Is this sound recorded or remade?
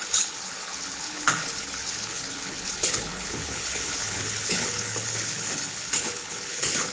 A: remade